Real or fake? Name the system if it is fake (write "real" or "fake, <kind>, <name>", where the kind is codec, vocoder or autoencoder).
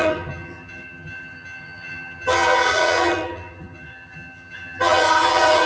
fake, vocoder, HiFi-GAN